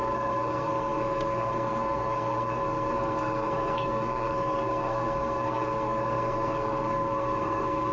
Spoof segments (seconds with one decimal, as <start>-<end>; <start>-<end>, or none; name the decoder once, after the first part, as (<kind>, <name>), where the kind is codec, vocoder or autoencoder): 0.0-7.9 (codec, SNAC)